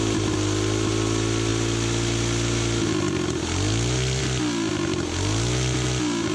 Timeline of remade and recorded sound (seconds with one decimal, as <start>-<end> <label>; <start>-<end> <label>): 0.0-6.3 recorded